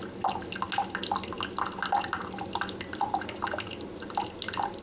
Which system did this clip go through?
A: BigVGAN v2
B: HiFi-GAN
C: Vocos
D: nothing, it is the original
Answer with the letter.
D